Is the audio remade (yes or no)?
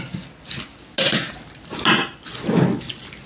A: no